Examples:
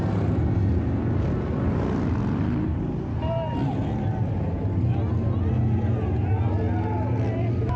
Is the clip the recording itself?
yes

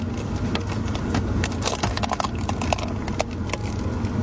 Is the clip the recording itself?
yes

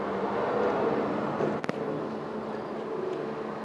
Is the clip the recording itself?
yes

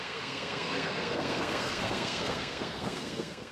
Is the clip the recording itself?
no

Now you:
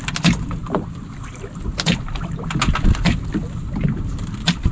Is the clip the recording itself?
yes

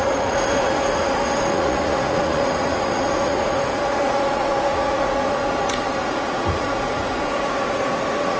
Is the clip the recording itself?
no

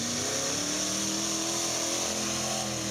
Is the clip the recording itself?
yes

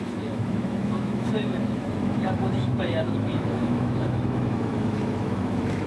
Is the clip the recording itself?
no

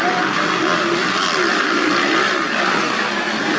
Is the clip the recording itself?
yes